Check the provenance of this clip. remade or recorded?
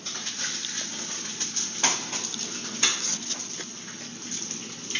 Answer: recorded